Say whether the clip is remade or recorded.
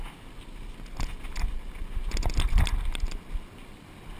recorded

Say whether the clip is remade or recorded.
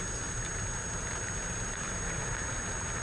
recorded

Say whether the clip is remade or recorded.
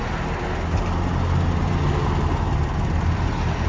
recorded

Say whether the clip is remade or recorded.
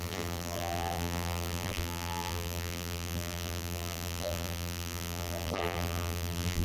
remade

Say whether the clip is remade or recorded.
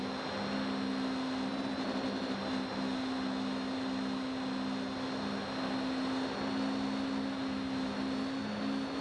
recorded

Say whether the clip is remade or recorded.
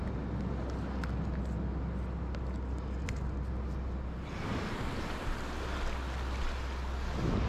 recorded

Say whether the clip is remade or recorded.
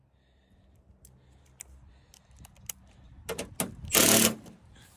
recorded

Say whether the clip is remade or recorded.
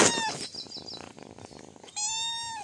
recorded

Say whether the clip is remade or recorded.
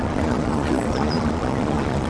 remade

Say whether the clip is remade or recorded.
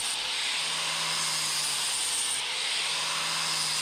recorded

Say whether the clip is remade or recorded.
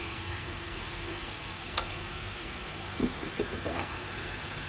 remade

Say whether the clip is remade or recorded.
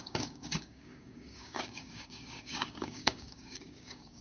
remade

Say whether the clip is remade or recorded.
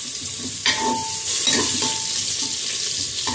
recorded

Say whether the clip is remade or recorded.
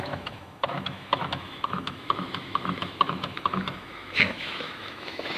remade